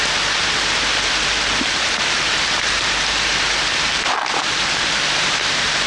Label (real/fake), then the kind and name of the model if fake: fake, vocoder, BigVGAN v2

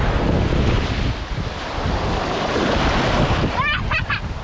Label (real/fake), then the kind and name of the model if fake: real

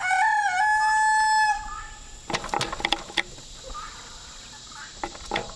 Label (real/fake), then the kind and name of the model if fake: real